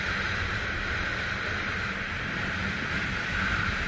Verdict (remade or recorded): recorded